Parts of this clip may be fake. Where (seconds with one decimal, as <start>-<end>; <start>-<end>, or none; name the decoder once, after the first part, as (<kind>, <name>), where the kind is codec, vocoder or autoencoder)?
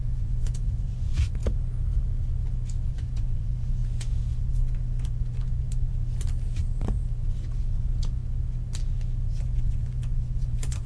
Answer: 0.0-1.4 (vocoder, Vocos); 2.9-5.9; 7.8-8.2; 9.4-10.9